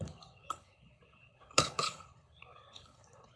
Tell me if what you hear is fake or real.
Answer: fake